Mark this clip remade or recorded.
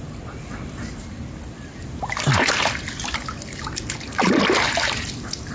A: recorded